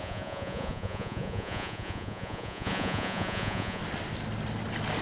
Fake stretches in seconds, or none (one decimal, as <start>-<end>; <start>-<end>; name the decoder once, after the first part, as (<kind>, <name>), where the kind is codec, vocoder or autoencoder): 0.0-3.8 (vocoder, Vocos)